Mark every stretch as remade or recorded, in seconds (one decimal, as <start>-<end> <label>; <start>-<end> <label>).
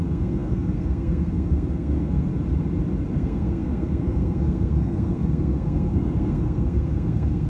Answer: 0.0-2.3 remade; 2.3-3.1 recorded; 3.1-7.5 remade